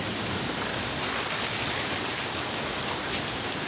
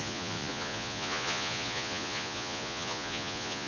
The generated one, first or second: second